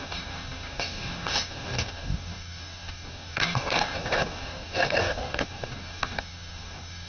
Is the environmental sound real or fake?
fake